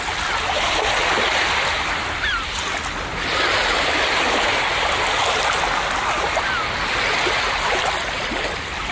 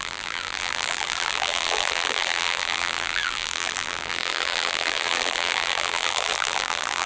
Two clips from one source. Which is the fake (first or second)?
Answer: second